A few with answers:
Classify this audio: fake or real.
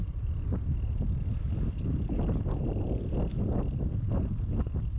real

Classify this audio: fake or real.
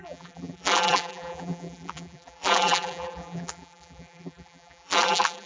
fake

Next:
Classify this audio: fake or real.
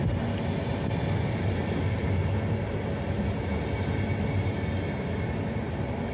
real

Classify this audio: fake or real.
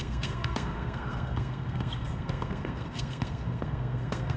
fake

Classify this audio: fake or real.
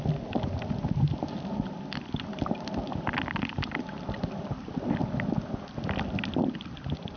real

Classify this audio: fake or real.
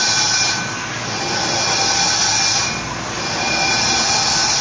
real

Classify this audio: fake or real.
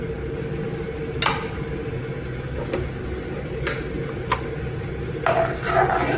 real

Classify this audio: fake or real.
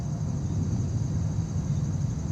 real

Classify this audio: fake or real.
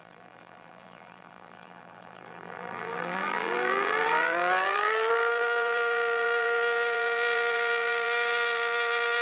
fake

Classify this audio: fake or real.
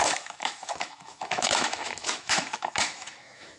fake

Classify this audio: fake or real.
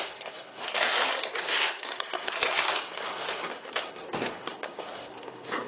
fake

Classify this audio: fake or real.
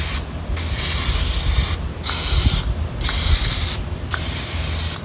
real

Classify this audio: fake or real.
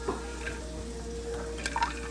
real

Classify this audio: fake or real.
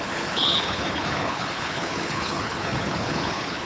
fake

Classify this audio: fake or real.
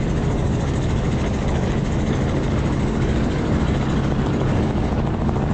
fake